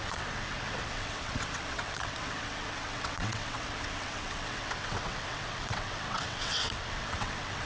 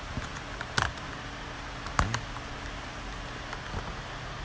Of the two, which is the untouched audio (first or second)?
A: second